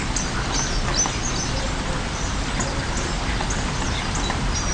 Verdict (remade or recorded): recorded